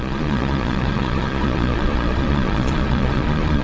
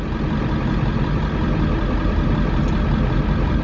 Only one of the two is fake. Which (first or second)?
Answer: first